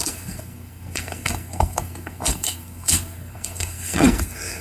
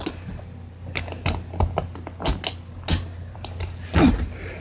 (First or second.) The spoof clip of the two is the first